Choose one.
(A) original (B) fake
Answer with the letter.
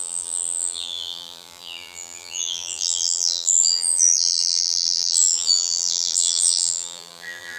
B